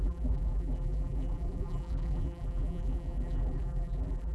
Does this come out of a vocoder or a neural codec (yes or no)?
yes